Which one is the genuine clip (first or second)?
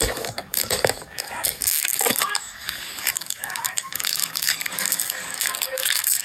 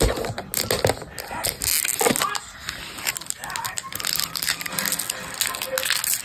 second